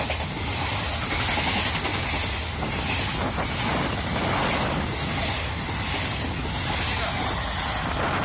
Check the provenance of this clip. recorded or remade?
recorded